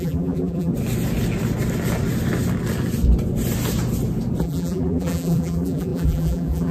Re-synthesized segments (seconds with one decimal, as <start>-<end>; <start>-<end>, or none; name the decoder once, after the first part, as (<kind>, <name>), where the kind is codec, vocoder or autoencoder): 0.0-0.7 (vocoder, BigVGAN v2); 4.4-6.7